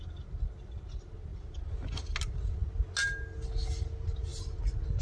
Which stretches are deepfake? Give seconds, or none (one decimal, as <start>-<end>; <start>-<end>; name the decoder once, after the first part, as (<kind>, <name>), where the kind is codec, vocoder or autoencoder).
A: none